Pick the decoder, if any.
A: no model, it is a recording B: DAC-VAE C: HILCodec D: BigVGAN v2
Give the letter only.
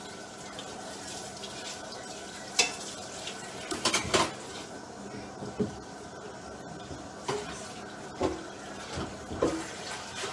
A